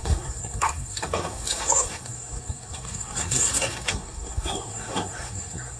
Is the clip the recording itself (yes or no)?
no